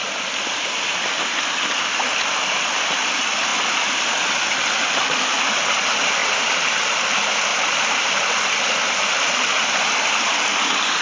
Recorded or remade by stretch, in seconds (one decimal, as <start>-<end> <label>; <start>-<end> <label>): 0.0-0.7 remade; 0.7-6.2 recorded; 6.2-6.8 remade; 6.8-7.5 recorded; 7.5-8.1 remade; 8.1-11.0 recorded